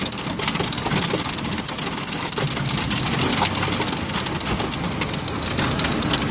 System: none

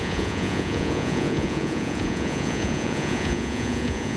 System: vocoder, Vocos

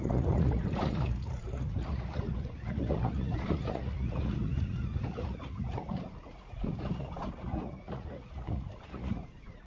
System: vocoder, Vocos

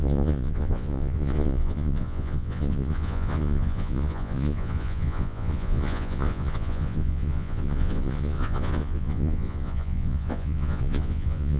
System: vocoder, Vocos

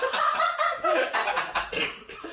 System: vocoder, Vocos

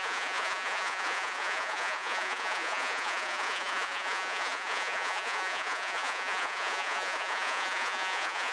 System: vocoder, Vocos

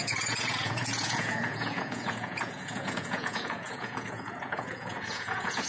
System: vocoder, Vocos